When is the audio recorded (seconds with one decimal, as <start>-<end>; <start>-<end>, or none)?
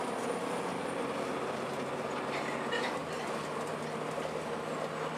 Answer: 0.0-5.2